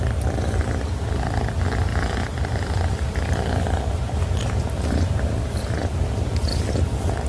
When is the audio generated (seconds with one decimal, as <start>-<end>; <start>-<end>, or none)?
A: none